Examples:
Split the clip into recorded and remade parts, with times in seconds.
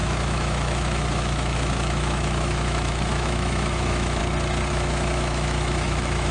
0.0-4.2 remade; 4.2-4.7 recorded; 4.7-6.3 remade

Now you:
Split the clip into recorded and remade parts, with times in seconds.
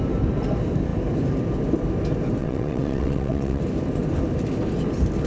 0.0-2.4 recorded; 2.4-3.6 remade; 3.6-5.3 recorded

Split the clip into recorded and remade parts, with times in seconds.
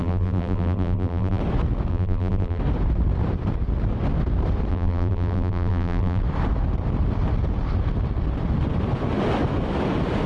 0.0-1.4 remade; 1.4-1.9 recorded; 1.9-2.6 remade; 2.6-4.7 recorded; 4.7-6.2 remade; 6.2-10.3 recorded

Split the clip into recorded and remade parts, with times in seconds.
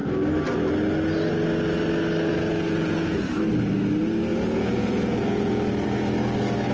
0.0-2.3 recorded; 2.3-3.4 remade; 3.4-4.3 recorded; 4.3-5.7 remade; 5.7-6.7 recorded